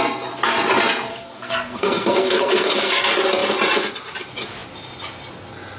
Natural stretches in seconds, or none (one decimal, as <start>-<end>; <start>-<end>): 0.0-1.1; 3.0-5.8